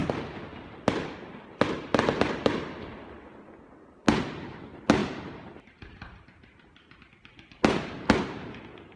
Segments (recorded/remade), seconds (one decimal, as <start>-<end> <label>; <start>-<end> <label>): 0.0-5.0 recorded; 5.0-7.0 remade; 7.0-9.0 recorded